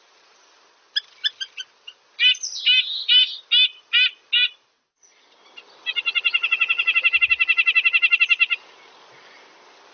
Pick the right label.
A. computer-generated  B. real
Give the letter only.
B